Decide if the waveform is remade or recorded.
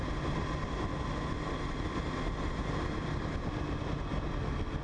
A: recorded